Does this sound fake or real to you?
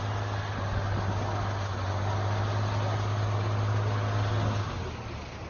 real